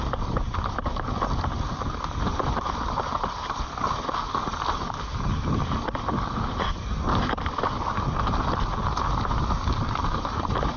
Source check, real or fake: real